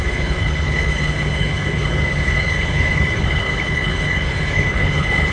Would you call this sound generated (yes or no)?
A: yes